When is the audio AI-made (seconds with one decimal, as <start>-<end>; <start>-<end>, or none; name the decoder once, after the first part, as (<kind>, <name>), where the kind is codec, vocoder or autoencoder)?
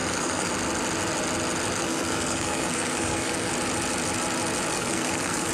0.0-0.5 (codec, SNAC); 1.8-3.5; 4.7-5.5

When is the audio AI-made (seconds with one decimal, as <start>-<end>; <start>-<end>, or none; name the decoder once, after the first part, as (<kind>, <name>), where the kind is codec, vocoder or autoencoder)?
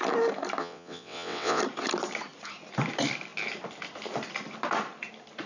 0.6-1.6 (vocoder, WaveNeXt)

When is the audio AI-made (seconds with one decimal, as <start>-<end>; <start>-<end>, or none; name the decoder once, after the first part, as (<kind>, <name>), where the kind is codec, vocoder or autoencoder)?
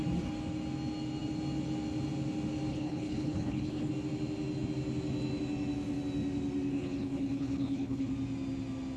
2.7-3.9 (codec, HILCodec); 6.7-8.1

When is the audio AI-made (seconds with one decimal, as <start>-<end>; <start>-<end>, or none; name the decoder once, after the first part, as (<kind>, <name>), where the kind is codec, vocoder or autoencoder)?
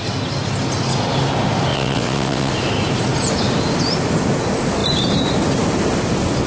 1.7-2.5 (vocoder, WaveNeXt)